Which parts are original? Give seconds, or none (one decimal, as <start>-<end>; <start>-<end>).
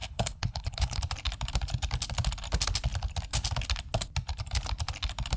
1.0-5.4